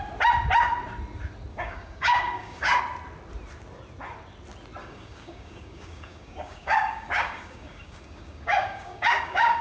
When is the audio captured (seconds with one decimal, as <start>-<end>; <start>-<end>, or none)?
0.0-1.5; 2.8-4.8